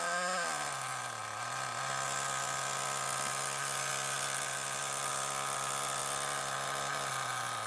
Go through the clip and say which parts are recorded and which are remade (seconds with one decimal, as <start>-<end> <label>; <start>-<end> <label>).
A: 0.0-7.7 recorded